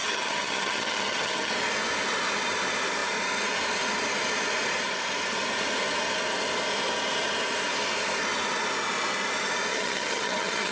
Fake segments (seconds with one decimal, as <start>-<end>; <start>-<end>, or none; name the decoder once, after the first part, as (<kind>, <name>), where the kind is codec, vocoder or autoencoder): 0.0-1.5 (vocoder, HiFi-GAN); 9.7-10.7